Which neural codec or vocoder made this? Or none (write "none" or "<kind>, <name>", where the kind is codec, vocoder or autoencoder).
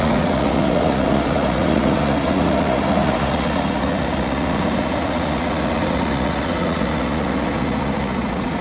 vocoder, Vocos